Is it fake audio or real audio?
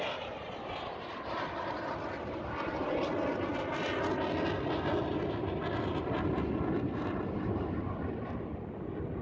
real